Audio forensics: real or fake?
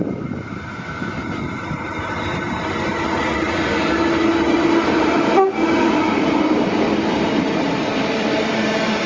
real